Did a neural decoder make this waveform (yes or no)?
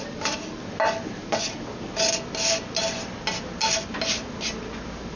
no